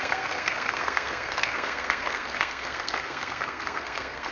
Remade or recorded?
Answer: remade